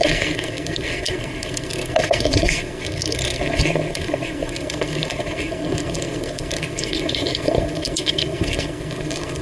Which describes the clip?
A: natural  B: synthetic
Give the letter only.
B